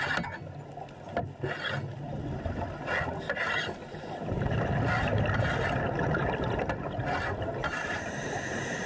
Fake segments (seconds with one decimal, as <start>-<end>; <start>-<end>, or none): 3.8-4.9; 7.6-8.9